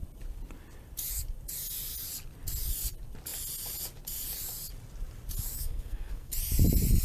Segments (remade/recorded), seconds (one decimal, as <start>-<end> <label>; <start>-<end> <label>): 0.0-5.5 recorded; 5.5-6.3 remade; 6.3-7.0 recorded